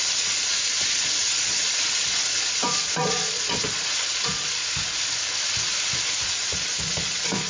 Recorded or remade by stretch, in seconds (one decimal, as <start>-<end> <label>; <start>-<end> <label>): 0.0-4.6 remade; 4.6-6.2 recorded; 6.2-7.5 remade